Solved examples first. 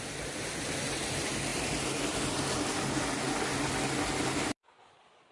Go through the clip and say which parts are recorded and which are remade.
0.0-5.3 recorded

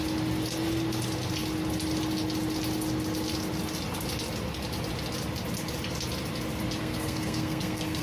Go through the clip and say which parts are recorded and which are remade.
0.0-6.8 recorded; 6.8-8.0 remade

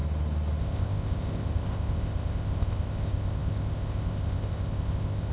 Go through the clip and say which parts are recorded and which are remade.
0.0-0.6 recorded; 0.6-5.3 remade

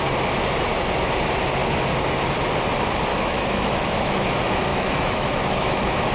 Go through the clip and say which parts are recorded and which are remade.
0.0-3.1 recorded; 3.1-4.3 remade; 4.3-4.7 recorded; 4.7-6.1 remade

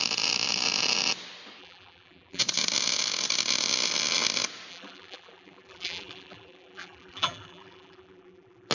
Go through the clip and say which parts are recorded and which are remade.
0.0-1.6 recorded; 1.6-2.4 remade; 2.4-4.7 recorded; 4.7-8.7 remade

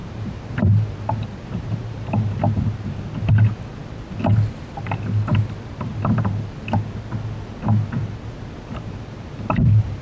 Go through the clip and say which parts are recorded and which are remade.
0.0-2.4 remade; 2.4-8.7 recorded; 8.7-10.0 remade

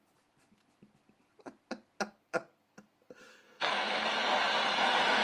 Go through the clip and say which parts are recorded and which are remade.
0.0-3.3 recorded; 3.3-4.0 remade; 4.0-5.2 recorded